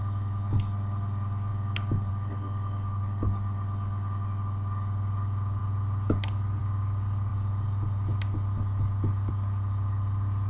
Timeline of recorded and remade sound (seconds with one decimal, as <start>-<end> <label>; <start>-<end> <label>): 0.0-10.5 recorded